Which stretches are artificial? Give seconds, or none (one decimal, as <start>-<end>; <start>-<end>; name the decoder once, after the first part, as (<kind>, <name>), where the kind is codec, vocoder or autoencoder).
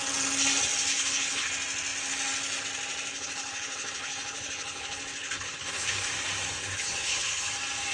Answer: 0.9-1.5 (codec, HILCodec); 3.1-6.1; 6.6-7.5